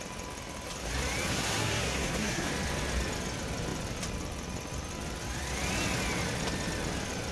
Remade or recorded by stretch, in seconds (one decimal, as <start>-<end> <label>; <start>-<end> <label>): 0.0-1.3 recorded; 1.3-2.5 remade; 2.5-7.3 recorded